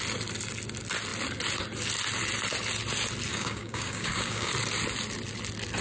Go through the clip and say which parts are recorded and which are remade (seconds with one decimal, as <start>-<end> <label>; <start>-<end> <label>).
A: 0.0-3.3 recorded; 3.3-4.5 remade; 4.5-5.8 recorded